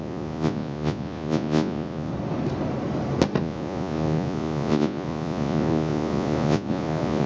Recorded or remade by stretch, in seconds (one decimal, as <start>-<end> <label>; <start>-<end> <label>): 0.0-2.1 remade; 2.1-3.4 recorded; 3.4-7.3 remade